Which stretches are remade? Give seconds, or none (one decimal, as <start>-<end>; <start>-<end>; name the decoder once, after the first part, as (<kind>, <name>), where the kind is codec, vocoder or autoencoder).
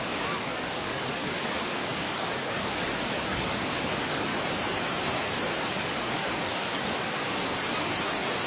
0.0-4.3 (codec, DAC); 5.7-7.4